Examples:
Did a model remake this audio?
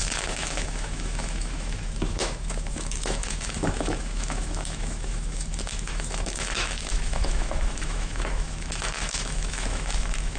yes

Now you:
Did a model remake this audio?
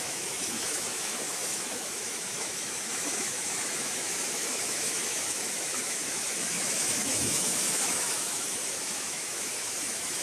yes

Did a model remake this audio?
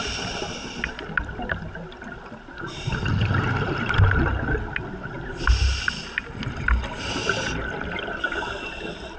no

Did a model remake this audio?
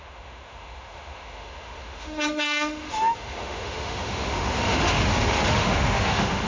yes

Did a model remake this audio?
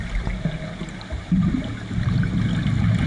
no